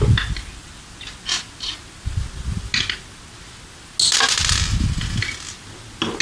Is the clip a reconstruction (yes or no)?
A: no